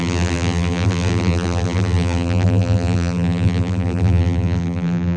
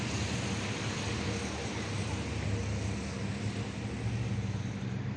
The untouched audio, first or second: second